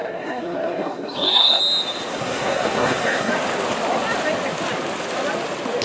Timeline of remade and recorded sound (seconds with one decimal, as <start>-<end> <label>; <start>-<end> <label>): 0.0-1.6 remade; 1.6-2.1 recorded; 2.1-3.3 remade; 3.3-5.8 recorded